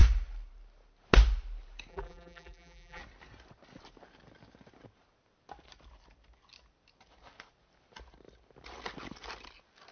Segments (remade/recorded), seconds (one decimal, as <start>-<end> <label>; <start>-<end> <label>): 0.0-1.9 recorded; 1.9-3.0 remade; 3.0-9.9 recorded